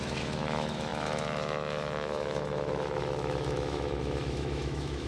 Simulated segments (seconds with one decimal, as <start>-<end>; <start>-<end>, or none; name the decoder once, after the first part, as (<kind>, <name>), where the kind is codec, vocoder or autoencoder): 0.0-5.1 (autoencoder, DAC-VAE)